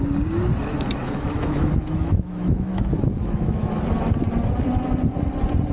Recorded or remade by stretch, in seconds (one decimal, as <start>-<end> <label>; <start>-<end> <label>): 0.0-1.0 recorded; 1.0-3.8 remade; 3.8-5.7 recorded